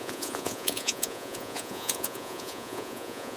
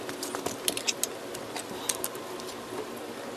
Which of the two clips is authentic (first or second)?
second